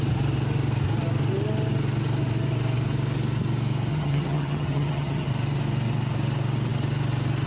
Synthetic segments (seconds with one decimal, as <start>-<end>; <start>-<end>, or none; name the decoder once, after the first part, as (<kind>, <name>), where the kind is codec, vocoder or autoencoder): 3.9-5.3 (vocoder, HiFi-GAN)